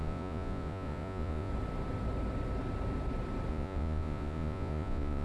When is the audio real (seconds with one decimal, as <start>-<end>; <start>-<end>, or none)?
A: 1.5-3.5